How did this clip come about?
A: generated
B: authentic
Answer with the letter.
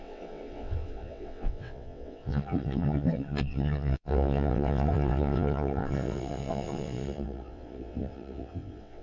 A